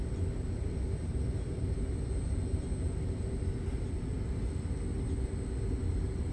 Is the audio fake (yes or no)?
no